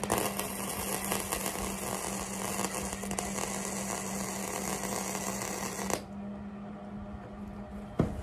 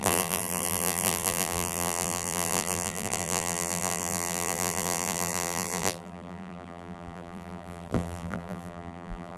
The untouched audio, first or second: first